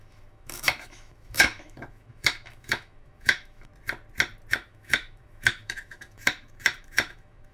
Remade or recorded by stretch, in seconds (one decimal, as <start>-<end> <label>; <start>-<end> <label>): 0.0-3.7 remade; 3.7-4.5 recorded; 4.5-7.5 remade